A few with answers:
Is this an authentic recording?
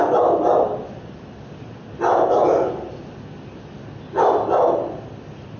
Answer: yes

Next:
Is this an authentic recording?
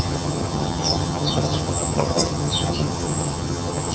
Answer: no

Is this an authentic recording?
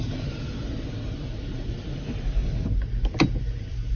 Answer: yes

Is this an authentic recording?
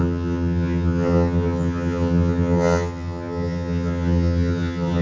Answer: no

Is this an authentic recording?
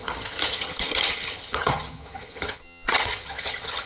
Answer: no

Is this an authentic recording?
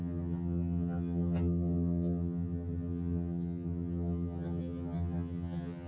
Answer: no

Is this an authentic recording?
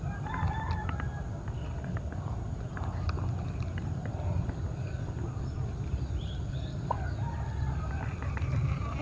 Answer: yes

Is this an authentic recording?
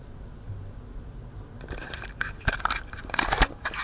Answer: yes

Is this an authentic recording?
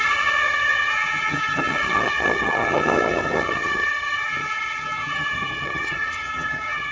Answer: no